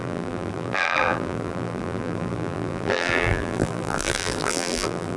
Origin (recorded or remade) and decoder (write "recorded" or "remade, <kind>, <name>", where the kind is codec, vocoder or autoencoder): remade, vocoder, BigVGAN v2